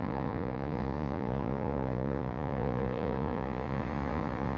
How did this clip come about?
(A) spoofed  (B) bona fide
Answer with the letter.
A